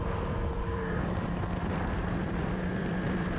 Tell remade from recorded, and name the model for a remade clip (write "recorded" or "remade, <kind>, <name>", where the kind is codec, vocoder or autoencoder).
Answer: remade, vocoder, BigVGAN v2